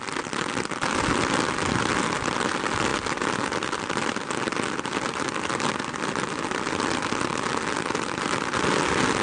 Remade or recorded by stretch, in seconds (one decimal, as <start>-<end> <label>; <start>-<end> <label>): 0.0-9.2 recorded